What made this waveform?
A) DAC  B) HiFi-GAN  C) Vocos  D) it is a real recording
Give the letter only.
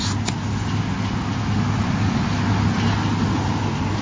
D